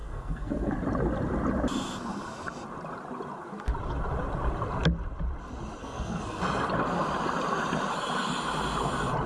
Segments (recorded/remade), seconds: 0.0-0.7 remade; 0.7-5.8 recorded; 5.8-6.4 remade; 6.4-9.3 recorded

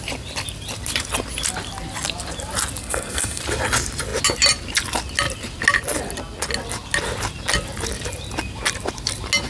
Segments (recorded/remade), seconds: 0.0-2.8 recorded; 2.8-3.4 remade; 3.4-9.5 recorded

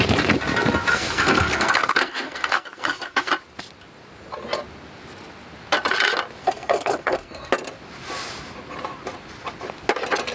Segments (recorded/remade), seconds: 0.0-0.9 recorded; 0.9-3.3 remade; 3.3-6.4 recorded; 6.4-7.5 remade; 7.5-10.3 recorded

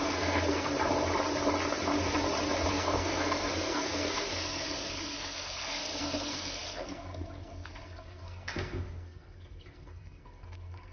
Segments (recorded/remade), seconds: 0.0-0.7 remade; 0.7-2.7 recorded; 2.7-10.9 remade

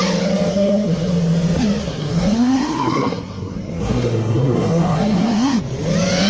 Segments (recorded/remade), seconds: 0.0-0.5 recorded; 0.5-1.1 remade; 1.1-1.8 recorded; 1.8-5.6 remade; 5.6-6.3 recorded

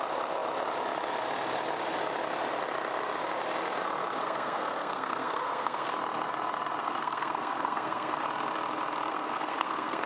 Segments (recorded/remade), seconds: 0.0-4.2 recorded; 4.2-5.9 remade; 5.9-6.8 recorded; 6.8-8.2 remade; 8.2-9.1 recorded; 9.1-10.1 remade

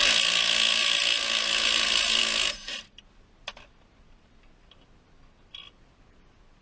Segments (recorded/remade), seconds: 0.0-6.6 recorded

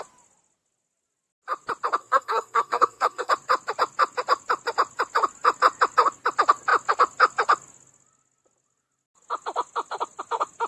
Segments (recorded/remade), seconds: 0.0-2.0 recorded; 2.0-3.3 remade; 3.3-10.7 recorded